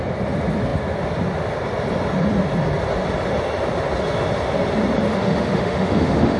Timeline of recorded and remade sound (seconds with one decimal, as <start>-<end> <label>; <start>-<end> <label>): 0.0-5.1 recorded; 5.1-6.4 remade